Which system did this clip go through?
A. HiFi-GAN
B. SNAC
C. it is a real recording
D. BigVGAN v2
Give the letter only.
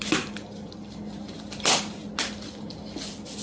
C